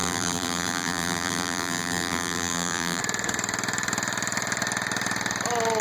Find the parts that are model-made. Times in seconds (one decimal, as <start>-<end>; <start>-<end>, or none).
0.0-3.0